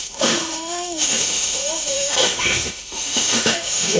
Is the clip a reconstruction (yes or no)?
yes